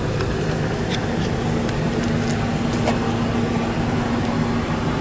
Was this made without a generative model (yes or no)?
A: yes